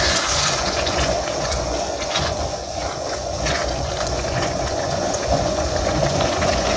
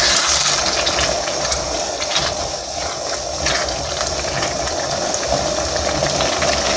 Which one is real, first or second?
second